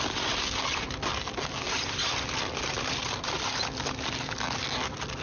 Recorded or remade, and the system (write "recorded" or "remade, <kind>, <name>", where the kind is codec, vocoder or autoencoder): recorded